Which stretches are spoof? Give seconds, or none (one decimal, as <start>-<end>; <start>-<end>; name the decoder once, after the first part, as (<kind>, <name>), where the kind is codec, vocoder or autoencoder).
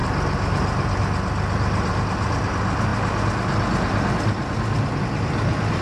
none